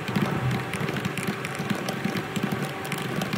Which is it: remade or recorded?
recorded